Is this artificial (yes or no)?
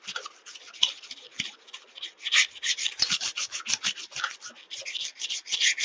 no